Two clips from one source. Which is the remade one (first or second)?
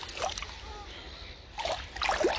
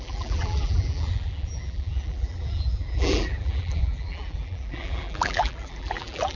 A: second